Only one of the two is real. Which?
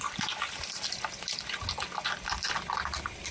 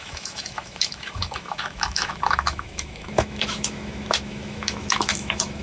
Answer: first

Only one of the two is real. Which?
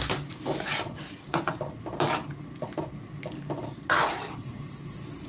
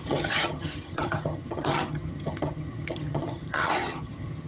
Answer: first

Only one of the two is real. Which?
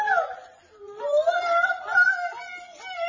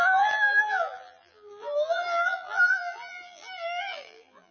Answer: first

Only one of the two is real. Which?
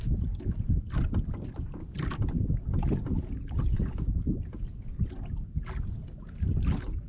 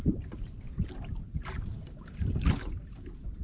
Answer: first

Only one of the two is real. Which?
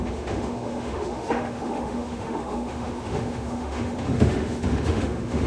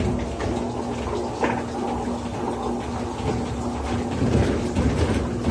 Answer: second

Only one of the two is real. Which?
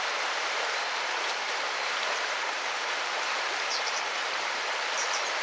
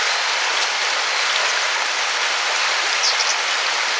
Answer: second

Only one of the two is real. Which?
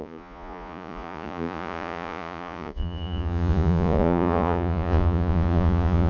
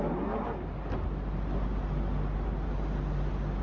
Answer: second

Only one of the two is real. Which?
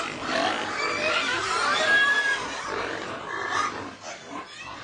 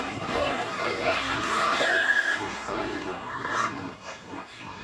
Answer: first